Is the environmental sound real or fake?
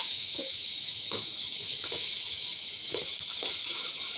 fake